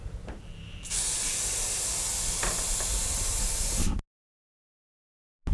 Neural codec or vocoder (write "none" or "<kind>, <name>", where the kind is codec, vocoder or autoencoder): none